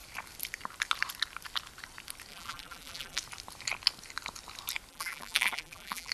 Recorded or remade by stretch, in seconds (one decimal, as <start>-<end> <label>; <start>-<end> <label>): 0.0-2.3 recorded; 2.3-3.2 remade; 3.2-4.9 recorded; 4.9-6.1 remade